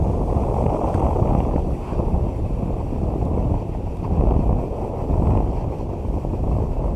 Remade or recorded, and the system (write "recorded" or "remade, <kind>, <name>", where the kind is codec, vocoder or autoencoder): recorded